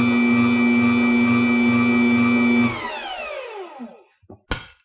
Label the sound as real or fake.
real